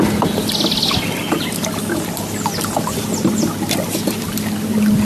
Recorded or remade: recorded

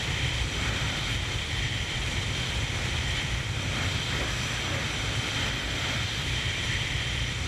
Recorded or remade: remade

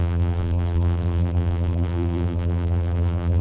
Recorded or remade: remade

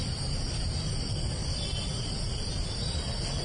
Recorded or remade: remade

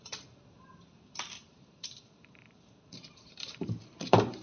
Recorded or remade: remade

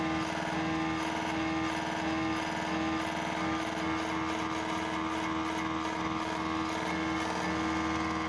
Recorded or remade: recorded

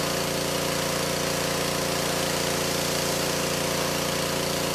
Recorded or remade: recorded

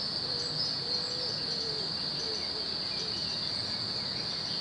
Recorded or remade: recorded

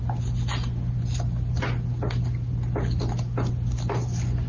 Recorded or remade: recorded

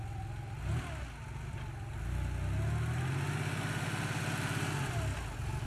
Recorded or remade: recorded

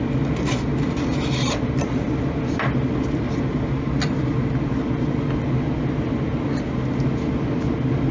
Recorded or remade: recorded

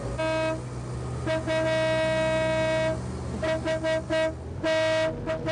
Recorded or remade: recorded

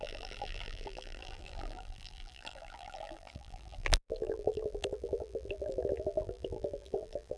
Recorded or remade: remade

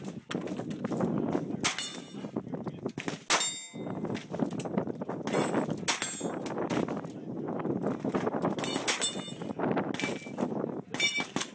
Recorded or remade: recorded